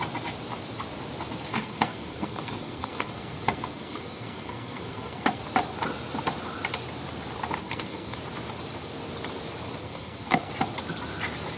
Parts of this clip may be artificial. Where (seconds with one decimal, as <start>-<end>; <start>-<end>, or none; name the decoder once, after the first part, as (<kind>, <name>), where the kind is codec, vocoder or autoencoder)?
1.5-5.4 (codec, SNAC); 7.6-8.2; 9.8-10.5